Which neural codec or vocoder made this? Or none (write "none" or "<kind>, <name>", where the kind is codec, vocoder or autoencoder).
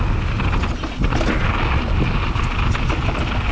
none